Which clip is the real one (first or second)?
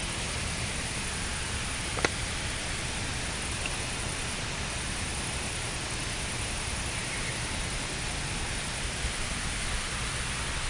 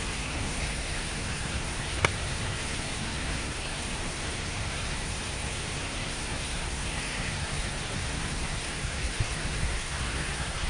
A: first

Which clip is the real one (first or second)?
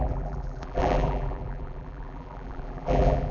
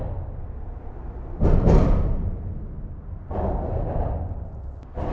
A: second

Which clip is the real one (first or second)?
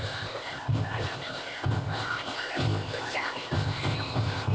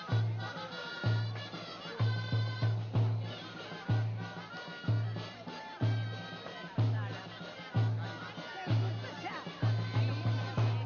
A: second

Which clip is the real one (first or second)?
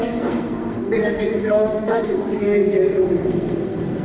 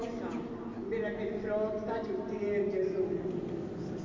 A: second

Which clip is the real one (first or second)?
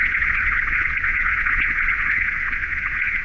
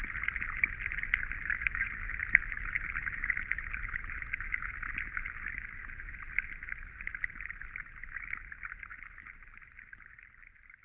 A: second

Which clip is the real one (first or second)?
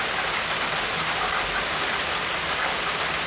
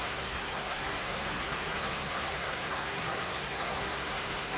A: first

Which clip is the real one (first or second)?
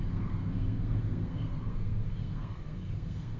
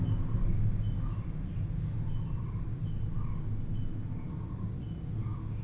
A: second